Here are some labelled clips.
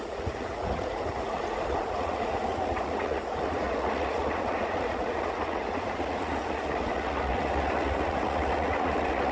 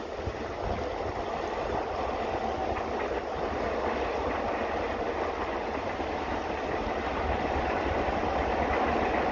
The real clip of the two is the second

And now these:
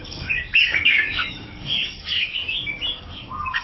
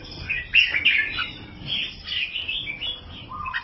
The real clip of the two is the second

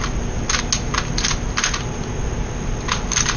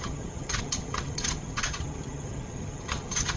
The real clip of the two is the first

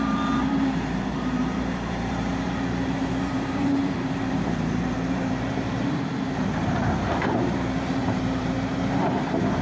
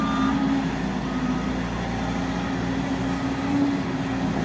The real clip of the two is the second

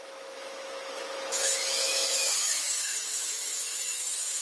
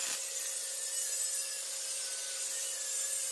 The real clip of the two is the second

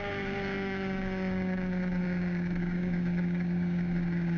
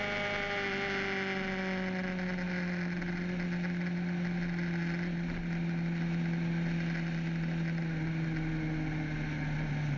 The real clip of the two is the second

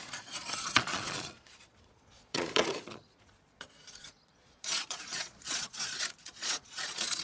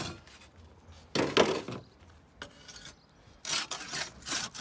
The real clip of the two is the second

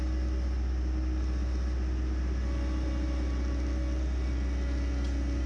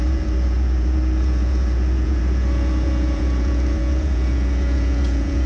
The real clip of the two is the first